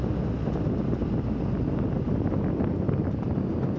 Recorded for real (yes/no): yes